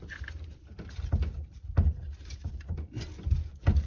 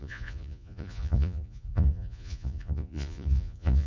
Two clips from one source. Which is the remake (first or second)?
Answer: second